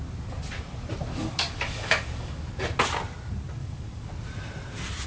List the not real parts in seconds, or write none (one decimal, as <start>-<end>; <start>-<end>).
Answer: 1.1-2.5; 3.6-4.1

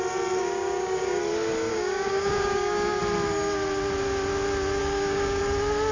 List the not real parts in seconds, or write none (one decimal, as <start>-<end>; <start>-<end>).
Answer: 0.4-1.2; 1.7-3.0; 4.8-5.4